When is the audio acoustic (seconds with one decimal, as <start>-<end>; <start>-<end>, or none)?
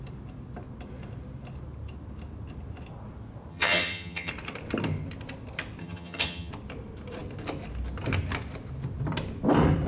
0.0-3.5; 4.3-5.8; 6.5-9.9